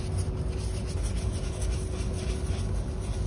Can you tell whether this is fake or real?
real